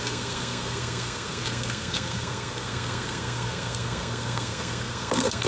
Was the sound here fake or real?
fake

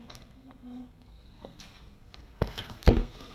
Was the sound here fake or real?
fake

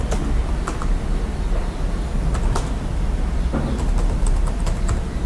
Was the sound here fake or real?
real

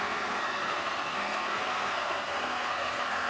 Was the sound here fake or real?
fake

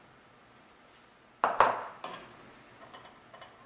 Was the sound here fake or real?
real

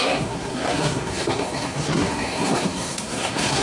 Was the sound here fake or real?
fake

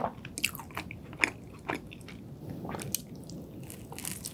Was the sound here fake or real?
real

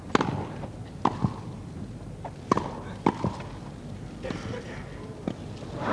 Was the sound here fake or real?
real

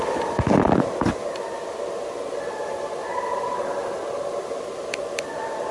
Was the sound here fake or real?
real